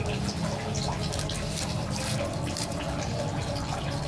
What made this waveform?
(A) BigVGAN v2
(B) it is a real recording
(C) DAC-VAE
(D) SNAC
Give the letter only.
B